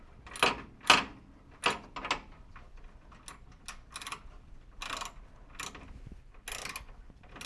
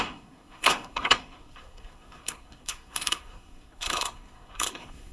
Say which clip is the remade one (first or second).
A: second